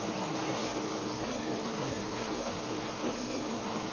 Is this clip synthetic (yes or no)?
yes